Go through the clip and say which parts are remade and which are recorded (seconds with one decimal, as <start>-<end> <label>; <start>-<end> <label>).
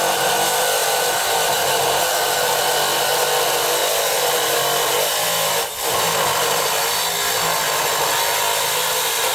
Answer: 0.0-0.8 recorded; 0.8-2.0 remade; 2.0-3.8 recorded; 3.8-7.0 remade; 7.0-9.3 recorded